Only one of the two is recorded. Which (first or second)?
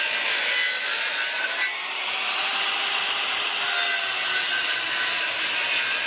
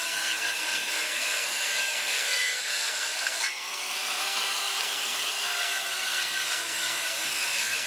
first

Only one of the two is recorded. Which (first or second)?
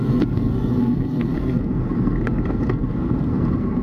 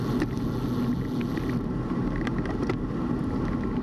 second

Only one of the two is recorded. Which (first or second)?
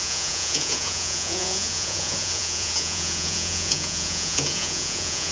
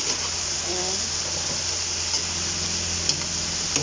second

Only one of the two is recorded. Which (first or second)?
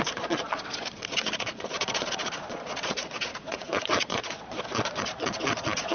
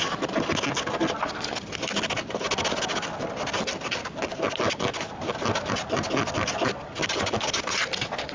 second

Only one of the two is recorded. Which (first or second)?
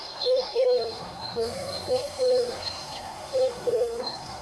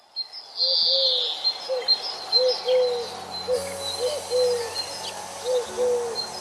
second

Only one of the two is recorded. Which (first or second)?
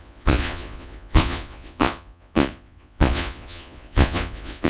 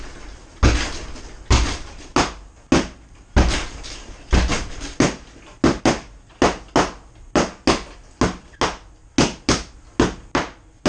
second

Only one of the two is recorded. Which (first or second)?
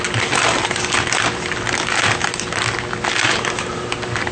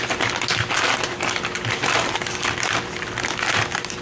first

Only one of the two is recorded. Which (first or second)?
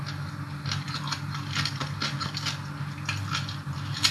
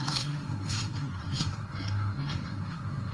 first